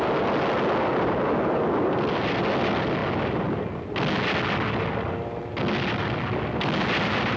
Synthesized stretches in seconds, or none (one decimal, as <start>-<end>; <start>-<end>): none